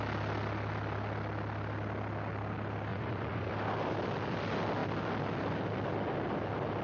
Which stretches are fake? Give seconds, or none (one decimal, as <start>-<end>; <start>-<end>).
2.9-3.5